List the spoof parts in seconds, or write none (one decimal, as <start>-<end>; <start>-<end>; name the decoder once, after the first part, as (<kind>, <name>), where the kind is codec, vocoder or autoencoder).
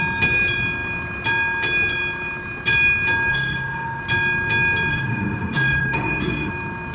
3.3-4.0 (autoencoder, DAC-VAE); 4.9-6.5